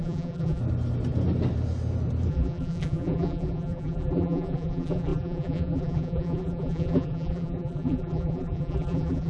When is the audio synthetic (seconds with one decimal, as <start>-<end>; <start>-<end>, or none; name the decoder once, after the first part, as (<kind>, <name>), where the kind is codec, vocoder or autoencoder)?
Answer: 0.0-0.6 (vocoder, BigVGAN v2); 2.3-9.3